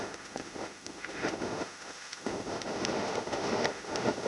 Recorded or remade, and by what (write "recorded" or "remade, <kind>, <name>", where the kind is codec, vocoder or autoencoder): remade, autoencoder, DAC-VAE